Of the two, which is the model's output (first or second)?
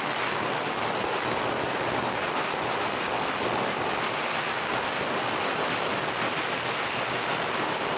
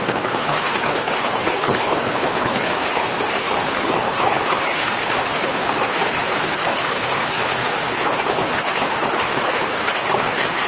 second